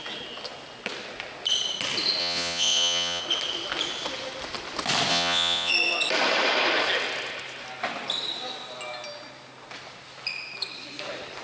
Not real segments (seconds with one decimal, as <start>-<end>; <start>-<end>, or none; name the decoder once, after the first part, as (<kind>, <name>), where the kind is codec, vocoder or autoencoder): 2.2-3.2 (vocoder, Vocos); 5.1-5.7

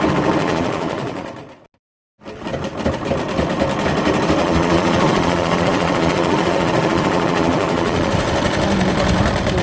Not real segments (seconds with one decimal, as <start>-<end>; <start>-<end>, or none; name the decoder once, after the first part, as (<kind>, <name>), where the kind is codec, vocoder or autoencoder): 0.4-1.3 (vocoder, Vocos); 4.4-8.1

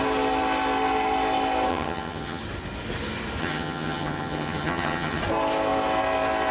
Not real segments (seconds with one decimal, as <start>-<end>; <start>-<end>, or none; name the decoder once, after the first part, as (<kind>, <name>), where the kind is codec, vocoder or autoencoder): 1.7-2.4 (vocoder, HiFi-GAN); 3.4-5.2

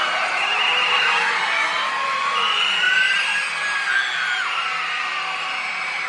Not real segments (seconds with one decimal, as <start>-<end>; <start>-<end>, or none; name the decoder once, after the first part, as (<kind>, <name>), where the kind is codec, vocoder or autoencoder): 2.2-2.8 (vocoder, Vocos)

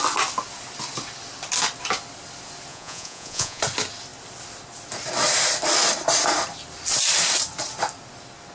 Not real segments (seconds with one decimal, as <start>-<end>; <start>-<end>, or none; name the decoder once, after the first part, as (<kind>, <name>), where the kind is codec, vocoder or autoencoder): 2.7-3.6 (vocoder, Vocos)

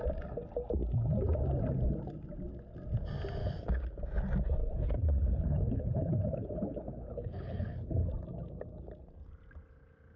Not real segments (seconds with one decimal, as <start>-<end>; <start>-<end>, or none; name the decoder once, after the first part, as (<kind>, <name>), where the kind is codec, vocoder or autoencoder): 3.4-4.0 (codec, HILCodec); 4.6-8.1